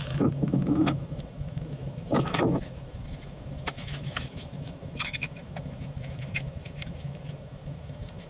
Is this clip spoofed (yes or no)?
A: yes